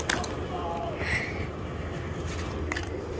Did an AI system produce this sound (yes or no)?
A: no